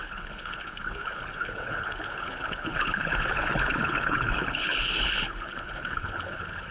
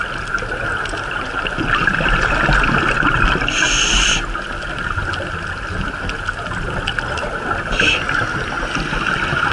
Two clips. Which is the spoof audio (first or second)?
first